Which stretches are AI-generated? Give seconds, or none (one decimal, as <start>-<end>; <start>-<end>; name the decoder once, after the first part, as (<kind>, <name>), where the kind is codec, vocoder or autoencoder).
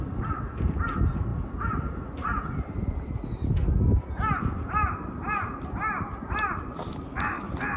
1.3-3.3 (vocoder, BigVGAN v2)